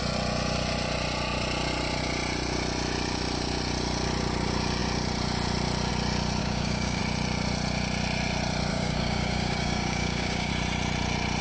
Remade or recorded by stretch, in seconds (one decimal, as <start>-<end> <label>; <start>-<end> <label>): 0.0-6.4 recorded; 6.4-7.0 remade; 7.0-8.7 recorded; 8.7-10.5 remade; 10.5-11.4 recorded